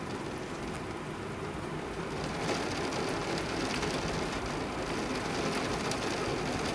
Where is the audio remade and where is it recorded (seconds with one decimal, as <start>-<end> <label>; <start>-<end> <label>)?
0.0-6.7 recorded